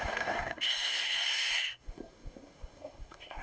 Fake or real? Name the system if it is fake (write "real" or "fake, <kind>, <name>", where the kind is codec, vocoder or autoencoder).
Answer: fake, codec, SNAC